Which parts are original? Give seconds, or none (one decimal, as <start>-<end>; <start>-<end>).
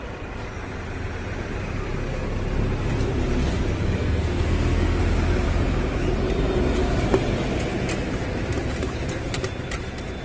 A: 0.0-4.0; 5.0-10.2